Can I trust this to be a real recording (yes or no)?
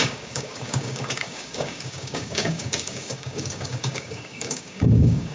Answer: no